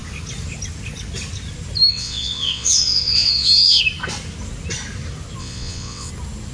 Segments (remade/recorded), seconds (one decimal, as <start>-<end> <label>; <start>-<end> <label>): 0.0-1.9 recorded; 1.9-3.8 remade; 3.8-5.4 recorded; 5.4-6.1 remade; 6.1-6.5 recorded